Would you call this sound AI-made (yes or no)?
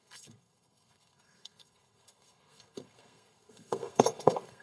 yes